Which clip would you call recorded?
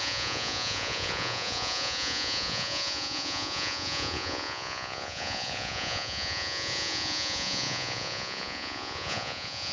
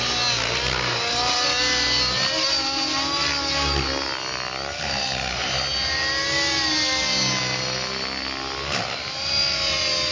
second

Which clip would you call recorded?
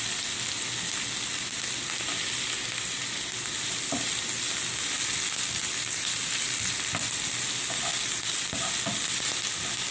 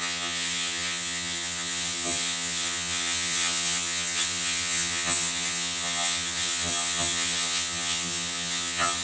first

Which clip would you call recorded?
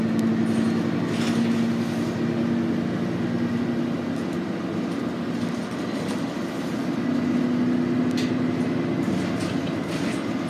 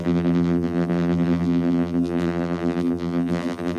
first